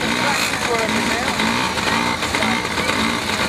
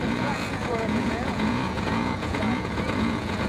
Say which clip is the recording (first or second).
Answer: first